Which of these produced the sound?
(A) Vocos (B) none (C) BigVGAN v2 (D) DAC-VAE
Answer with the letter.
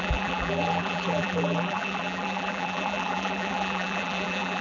C